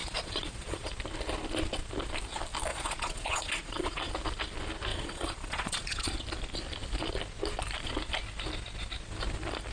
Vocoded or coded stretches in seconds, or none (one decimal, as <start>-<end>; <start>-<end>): 0.0-0.9; 2.7-4.1; 4.9-6.1